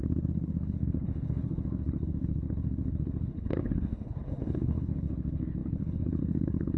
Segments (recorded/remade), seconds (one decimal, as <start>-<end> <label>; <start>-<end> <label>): 0.0-6.8 remade